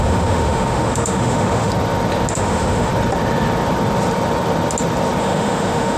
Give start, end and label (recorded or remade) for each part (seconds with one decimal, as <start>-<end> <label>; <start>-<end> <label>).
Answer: 0.0-1.7 remade; 1.7-2.3 recorded; 2.3-2.9 remade; 2.9-5.2 recorded; 5.2-6.0 remade